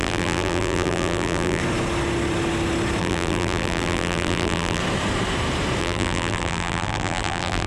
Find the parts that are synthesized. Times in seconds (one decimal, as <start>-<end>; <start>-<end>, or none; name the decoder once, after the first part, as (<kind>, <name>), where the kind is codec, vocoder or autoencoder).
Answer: 0.0-1.6 (vocoder, BigVGAN v2); 3.0-4.8; 5.8-7.7